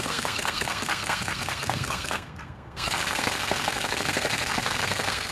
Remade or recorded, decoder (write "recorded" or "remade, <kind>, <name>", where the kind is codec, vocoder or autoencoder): remade, codec, SNAC